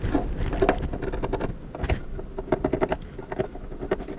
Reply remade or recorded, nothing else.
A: recorded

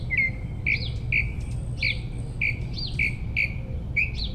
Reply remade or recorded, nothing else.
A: recorded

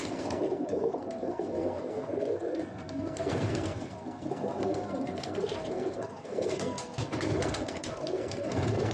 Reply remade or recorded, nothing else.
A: remade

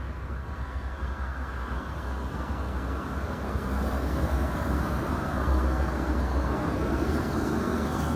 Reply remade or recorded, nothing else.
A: remade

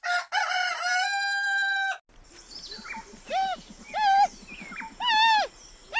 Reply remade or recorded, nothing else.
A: recorded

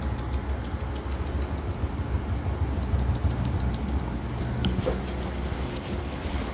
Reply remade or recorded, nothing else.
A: recorded